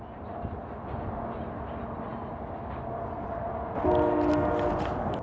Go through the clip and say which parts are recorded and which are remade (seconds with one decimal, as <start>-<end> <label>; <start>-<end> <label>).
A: 0.0-5.2 recorded